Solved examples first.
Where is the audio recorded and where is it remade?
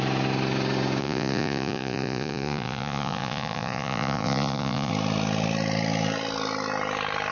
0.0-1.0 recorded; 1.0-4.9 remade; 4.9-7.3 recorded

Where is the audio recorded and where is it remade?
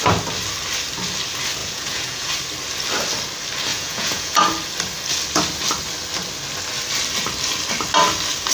0.0-1.6 recorded; 1.6-2.3 remade; 2.3-3.7 recorded; 3.7-4.4 remade; 4.4-8.5 recorded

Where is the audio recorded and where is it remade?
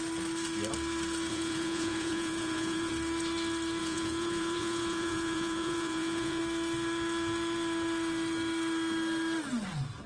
0.0-1.3 recorded; 1.3-2.9 remade; 2.9-3.8 recorded; 3.8-6.4 remade; 6.4-10.1 recorded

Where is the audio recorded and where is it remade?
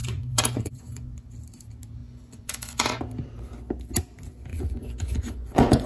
0.0-1.3 remade; 1.3-2.0 recorded; 2.0-3.0 remade; 3.0-4.5 recorded; 4.5-5.9 remade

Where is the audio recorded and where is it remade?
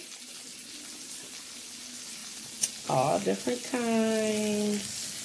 0.0-5.2 recorded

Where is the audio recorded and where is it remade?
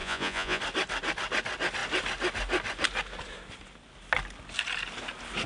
0.0-0.6 remade; 0.6-5.5 recorded